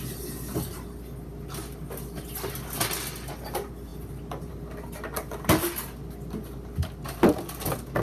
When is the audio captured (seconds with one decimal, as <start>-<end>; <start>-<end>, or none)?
0.0-8.0